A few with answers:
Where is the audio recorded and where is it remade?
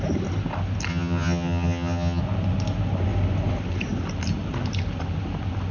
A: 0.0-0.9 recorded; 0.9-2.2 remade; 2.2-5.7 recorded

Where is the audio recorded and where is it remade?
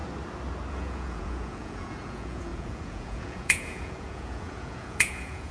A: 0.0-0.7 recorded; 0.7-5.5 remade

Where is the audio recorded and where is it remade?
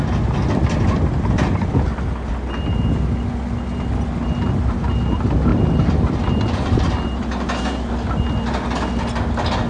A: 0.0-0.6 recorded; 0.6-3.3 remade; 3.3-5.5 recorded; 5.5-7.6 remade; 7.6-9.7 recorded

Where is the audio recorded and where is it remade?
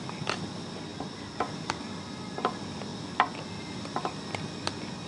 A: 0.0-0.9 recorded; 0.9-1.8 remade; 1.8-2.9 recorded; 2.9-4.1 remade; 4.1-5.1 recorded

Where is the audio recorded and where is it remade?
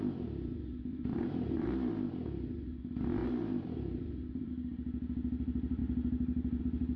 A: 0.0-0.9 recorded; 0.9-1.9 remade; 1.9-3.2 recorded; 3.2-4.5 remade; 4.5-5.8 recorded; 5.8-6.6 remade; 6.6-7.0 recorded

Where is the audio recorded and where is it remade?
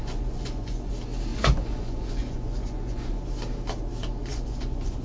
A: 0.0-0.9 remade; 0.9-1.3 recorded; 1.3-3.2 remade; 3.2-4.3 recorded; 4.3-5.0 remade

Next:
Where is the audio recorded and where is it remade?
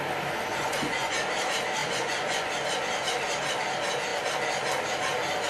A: 0.0-0.5 recorded; 0.5-1.2 remade; 1.2-1.8 recorded; 1.8-2.5 remade; 2.5-5.5 recorded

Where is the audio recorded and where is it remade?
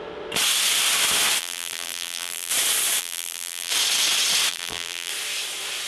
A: 0.0-1.4 recorded; 1.4-2.5 remade; 2.5-3.0 recorded; 3.0-3.7 remade; 3.7-4.5 recorded; 4.5-5.1 remade; 5.1-5.9 recorded